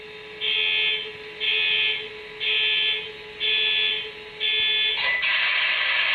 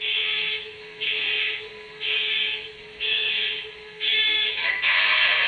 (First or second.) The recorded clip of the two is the first